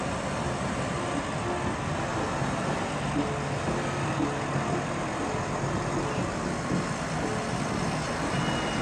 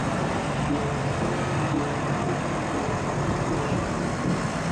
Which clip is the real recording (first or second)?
first